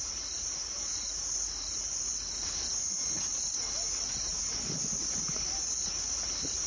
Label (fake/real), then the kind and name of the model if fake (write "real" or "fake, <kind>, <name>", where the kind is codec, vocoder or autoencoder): fake, vocoder, BigVGAN v2